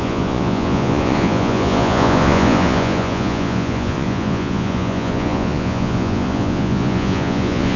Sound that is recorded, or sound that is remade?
remade